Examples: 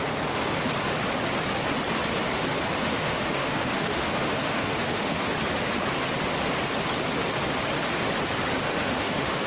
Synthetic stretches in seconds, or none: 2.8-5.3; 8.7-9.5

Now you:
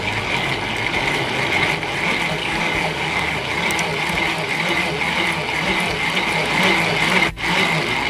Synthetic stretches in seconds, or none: 2.4-3.4

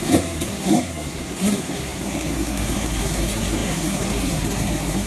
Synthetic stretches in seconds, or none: 0.0-5.1